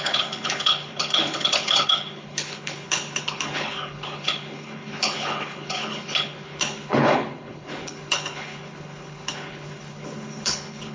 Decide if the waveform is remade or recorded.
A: remade